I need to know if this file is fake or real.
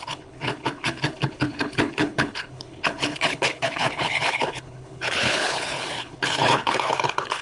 fake